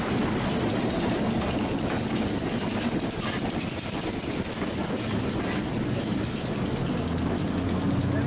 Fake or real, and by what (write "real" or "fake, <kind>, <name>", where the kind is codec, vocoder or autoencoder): real